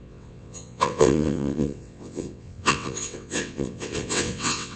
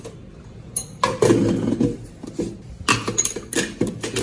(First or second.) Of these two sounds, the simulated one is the first